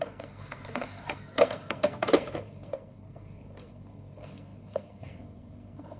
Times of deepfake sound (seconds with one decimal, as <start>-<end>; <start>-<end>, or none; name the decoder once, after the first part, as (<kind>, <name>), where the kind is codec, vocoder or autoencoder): 0.0-6.0 (codec, SNAC)

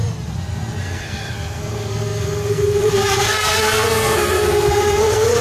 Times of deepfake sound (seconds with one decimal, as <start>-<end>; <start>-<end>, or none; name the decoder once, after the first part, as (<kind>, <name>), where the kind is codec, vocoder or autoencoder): 0.8-5.4 (codec, SNAC)

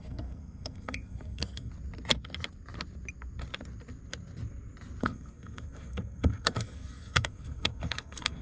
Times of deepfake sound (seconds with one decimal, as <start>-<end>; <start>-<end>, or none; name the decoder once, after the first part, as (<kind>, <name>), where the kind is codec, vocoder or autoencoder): 0.0-1.7 (codec, SNAC); 5.0-8.4